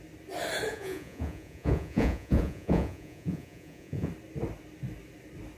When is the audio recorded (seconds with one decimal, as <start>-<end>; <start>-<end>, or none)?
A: 0.0-0.7; 4.1-5.6